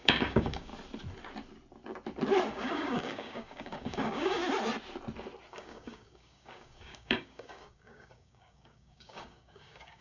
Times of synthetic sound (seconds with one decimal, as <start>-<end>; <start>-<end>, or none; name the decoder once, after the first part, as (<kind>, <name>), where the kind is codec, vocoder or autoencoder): 0.0-0.7 (codec, DAC); 2.5-4.4; 5.5-10.0